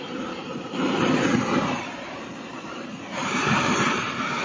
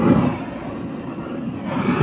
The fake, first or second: first